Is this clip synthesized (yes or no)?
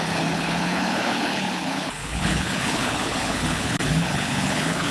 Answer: yes